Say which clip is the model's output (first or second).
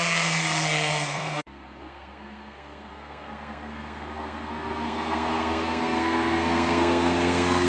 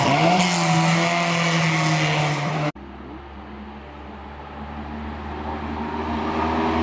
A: first